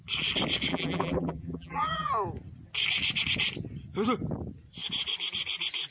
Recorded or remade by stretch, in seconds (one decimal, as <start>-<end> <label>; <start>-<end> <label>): 0.0-0.7 recorded; 0.7-2.1 remade; 2.1-5.9 recorded